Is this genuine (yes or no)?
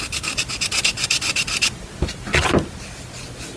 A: yes